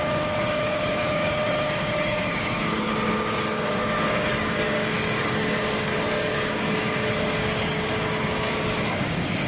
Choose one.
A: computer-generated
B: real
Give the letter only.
A